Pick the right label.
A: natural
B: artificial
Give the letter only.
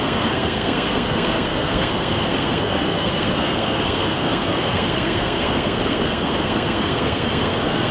B